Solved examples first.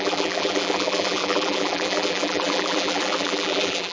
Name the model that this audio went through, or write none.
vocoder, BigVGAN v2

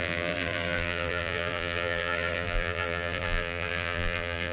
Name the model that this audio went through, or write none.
vocoder, BigVGAN v2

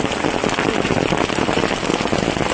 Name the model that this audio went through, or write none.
none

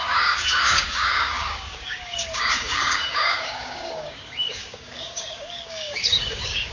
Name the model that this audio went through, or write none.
codec, DAC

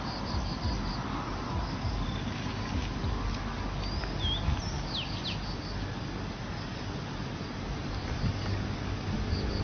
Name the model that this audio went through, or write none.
none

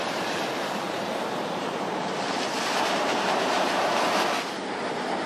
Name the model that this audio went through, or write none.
vocoder, BigVGAN v2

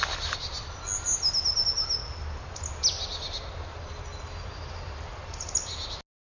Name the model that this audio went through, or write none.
none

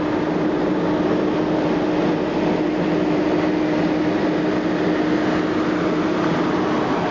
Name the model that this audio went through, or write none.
none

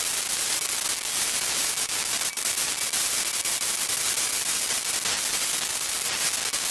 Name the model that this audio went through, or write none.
none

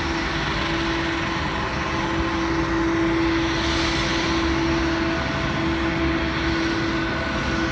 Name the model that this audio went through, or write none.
none